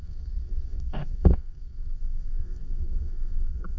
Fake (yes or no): yes